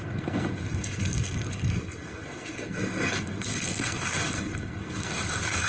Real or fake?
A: fake